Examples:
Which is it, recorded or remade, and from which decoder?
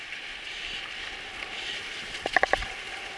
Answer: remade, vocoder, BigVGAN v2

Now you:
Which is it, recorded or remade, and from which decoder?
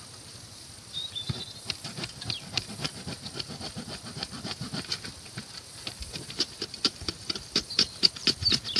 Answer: remade, vocoder, BigVGAN v2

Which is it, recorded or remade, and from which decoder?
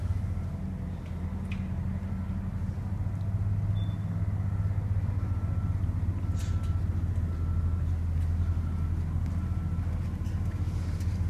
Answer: recorded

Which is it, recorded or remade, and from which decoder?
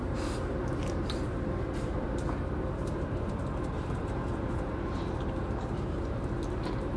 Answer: remade, vocoder, BigVGAN v2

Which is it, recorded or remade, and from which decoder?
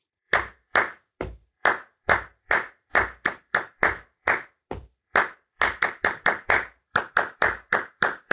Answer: remade, vocoder, BigVGAN v2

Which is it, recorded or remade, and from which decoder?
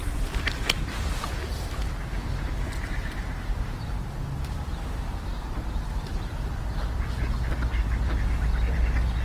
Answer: remade, vocoder, BigVGAN v2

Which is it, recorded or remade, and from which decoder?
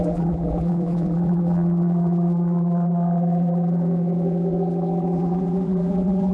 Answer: remade, vocoder, BigVGAN v2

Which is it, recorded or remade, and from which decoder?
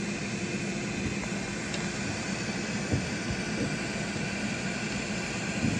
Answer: recorded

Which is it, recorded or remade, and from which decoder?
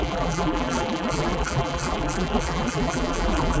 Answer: remade, vocoder, BigVGAN v2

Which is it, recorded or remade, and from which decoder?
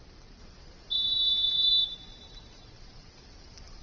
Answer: remade, vocoder, BigVGAN v2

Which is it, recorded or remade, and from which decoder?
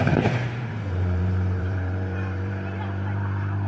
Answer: remade, vocoder, BigVGAN v2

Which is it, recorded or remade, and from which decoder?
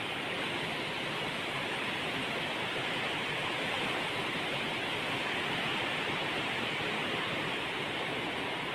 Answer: remade, vocoder, BigVGAN v2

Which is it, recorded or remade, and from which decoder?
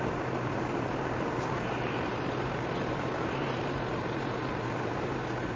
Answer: remade, vocoder, BigVGAN v2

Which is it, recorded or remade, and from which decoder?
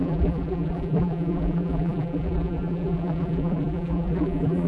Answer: remade, vocoder, BigVGAN v2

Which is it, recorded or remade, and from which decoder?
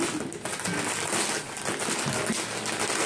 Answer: recorded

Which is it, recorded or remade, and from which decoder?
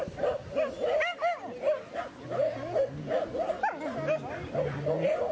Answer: recorded